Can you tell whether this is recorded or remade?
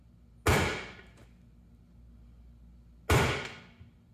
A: recorded